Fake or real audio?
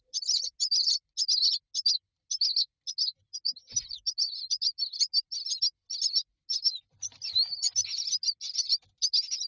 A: real